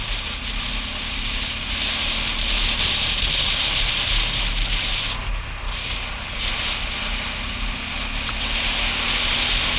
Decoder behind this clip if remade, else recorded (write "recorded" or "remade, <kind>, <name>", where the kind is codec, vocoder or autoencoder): recorded